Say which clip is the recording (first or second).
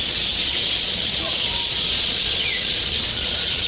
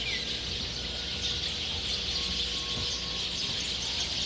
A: second